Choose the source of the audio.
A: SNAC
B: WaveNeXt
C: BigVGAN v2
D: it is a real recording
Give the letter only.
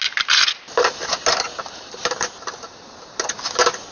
D